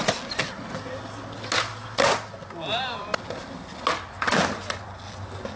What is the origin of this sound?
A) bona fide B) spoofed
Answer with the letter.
A